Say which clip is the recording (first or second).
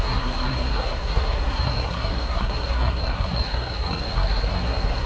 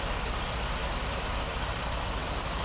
second